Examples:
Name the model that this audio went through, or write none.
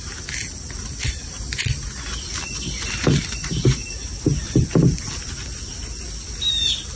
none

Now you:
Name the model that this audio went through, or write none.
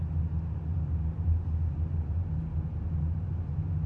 none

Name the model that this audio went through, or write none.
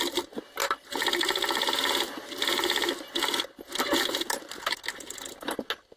none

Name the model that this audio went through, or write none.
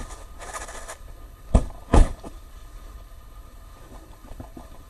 codec, HILCodec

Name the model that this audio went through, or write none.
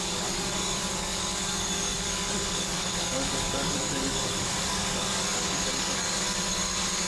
codec, DAC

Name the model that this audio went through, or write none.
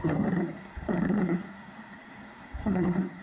codec, SNAC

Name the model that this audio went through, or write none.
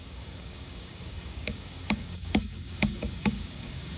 codec, DAC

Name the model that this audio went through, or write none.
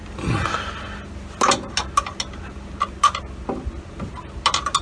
none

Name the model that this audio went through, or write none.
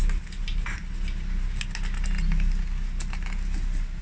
none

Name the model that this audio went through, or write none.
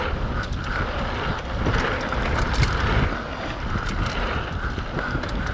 none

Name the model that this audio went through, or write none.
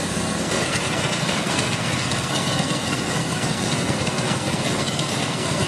codec, SNAC